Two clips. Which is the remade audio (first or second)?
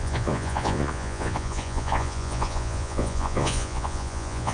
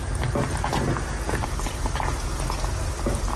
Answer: first